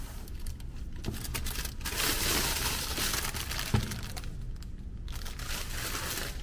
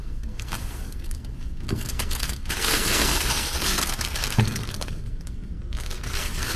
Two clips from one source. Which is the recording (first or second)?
first